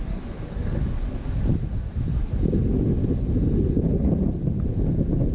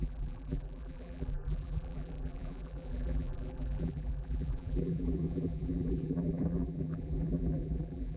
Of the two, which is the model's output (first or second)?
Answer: second